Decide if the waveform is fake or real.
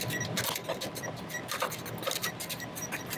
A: real